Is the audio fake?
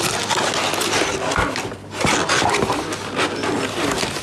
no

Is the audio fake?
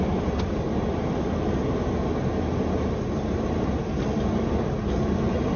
no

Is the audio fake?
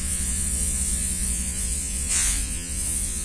yes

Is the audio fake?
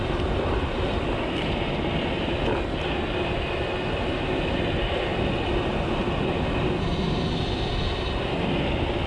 no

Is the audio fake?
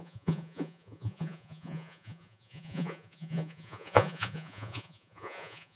yes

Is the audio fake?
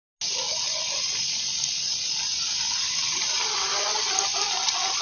no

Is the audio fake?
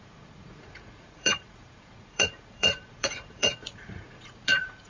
yes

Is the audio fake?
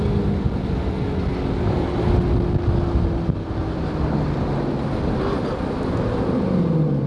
no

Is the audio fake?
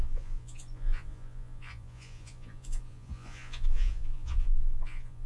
yes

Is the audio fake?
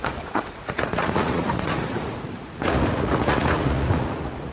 yes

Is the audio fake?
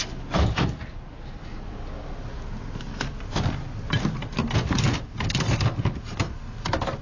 no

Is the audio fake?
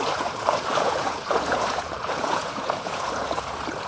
yes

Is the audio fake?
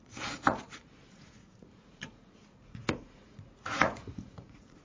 yes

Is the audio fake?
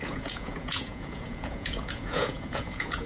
yes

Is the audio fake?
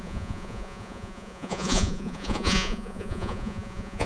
yes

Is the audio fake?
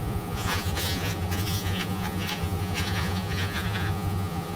yes